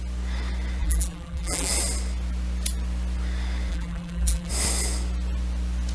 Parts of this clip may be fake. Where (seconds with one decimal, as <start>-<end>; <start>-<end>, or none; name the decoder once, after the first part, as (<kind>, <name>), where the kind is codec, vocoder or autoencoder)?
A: 0.8-1.7 (vocoder, BigVGAN v2); 3.7-4.5